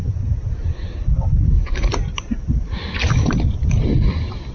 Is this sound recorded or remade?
recorded